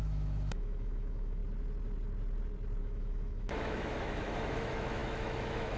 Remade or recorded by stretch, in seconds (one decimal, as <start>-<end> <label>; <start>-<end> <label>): 0.0-1.4 remade; 1.4-2.8 recorded; 2.8-5.8 remade